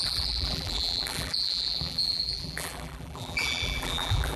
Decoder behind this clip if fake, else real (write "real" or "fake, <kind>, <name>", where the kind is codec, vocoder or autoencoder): fake, vocoder, BigVGAN v2